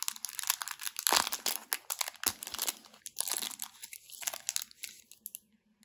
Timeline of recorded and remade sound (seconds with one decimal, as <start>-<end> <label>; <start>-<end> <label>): 0.0-5.8 recorded